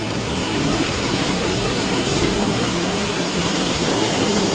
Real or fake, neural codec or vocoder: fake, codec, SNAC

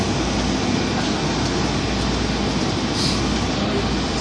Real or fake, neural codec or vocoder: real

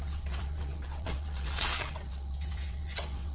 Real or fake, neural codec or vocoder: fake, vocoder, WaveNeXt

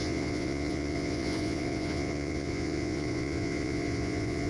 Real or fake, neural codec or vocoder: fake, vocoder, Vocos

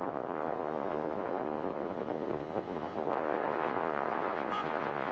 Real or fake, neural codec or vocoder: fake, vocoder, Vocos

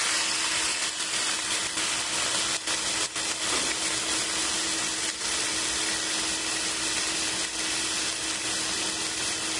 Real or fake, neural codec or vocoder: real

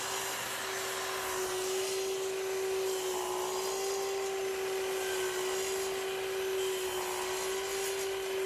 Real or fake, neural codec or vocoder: real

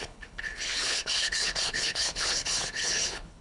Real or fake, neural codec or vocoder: fake, codec, HILCodec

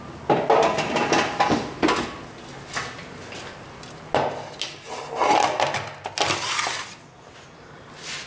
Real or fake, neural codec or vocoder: real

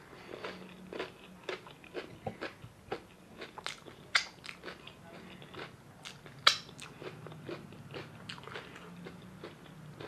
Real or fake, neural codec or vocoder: real